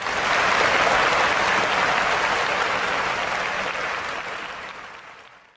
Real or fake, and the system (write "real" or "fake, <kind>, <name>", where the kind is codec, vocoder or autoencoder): real